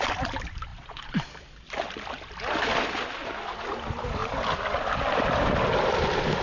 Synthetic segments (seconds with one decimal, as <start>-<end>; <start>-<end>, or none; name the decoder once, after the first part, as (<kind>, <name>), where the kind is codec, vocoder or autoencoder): none